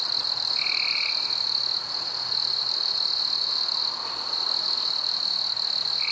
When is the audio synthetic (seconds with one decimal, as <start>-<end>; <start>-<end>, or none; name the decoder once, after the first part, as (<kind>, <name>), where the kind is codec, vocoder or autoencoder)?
none